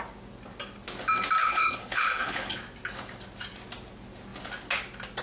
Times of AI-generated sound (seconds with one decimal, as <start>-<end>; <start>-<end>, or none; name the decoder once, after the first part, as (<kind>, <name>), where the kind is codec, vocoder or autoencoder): 1.4-2.6 (codec, HILCodec)

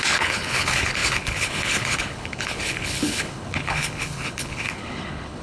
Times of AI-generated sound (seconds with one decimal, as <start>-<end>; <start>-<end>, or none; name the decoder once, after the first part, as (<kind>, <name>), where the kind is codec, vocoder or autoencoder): 0.0-5.4 (codec, HILCodec)